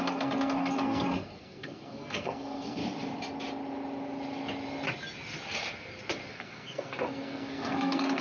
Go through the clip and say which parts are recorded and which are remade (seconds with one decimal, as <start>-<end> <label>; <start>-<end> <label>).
0.0-2.8 remade; 2.8-6.3 recorded; 6.3-8.2 remade